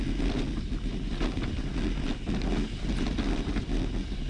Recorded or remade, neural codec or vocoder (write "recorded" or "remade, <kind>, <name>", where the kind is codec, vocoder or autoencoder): recorded